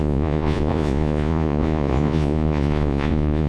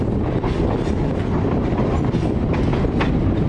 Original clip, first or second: second